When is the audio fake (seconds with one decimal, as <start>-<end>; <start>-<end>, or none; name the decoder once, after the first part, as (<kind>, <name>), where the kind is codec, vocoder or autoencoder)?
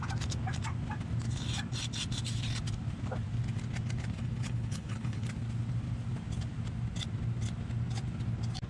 4.2-5.3 (codec, HILCodec)